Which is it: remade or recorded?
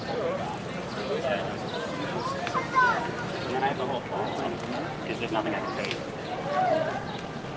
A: recorded